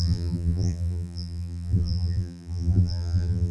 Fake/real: fake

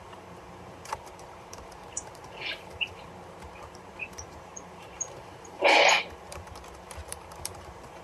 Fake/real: fake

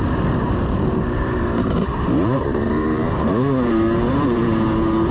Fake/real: fake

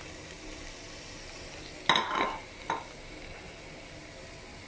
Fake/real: real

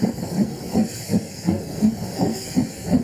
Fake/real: fake